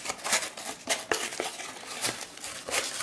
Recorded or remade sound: recorded